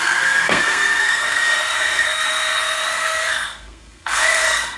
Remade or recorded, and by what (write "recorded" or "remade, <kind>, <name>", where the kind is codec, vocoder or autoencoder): remade, codec, SNAC